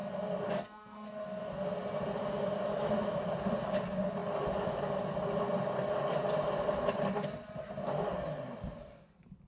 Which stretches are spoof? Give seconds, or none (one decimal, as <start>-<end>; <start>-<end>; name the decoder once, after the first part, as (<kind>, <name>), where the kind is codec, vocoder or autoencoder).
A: none